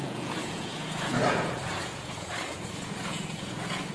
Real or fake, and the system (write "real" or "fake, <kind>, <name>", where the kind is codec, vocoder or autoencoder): fake, vocoder, Vocos